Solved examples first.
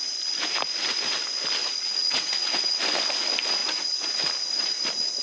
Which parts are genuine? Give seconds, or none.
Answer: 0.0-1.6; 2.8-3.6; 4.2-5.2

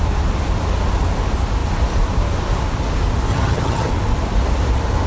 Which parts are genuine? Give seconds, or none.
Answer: 0.0-3.3; 3.9-5.1

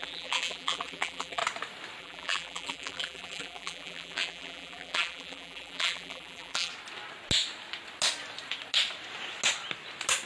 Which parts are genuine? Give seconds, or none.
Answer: 1.4-2.0; 6.7-10.3

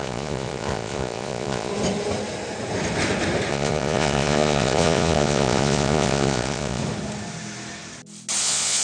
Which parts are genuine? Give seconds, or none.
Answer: 1.7-3.5; 6.8-8.4

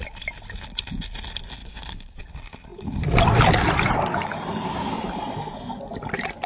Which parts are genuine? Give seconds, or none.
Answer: 0.0-1.6; 2.2-6.5

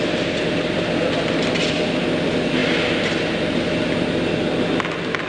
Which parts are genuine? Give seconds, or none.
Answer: 0.0-5.3

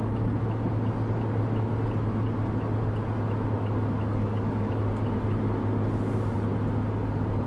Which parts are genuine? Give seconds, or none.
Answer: 0.0-4.1; 4.8-7.5